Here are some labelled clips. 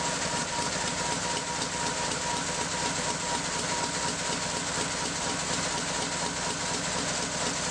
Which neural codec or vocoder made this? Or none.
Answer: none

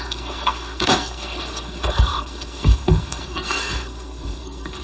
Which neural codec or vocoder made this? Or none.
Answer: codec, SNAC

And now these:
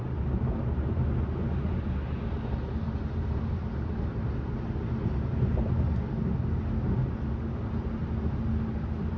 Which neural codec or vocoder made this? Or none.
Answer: none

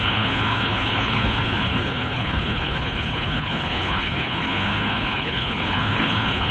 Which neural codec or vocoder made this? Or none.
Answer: codec, HILCodec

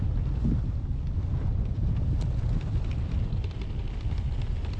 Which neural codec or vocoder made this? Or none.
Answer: none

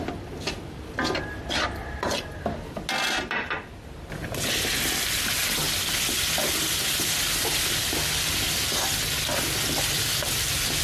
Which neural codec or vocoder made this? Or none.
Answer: none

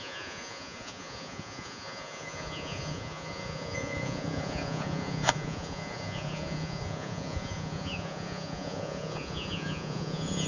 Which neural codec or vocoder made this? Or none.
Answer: vocoder, Vocos